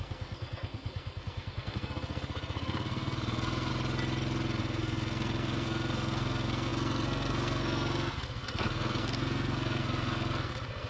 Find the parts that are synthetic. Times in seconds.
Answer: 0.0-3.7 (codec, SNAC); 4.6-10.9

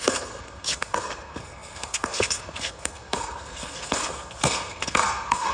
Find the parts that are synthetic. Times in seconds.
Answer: 0.0-5.5 (codec, SNAC)

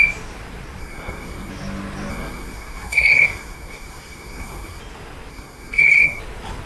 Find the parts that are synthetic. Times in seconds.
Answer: 0.8-1.5 (codec, SNAC); 2.1-4.8; 5.3-6.2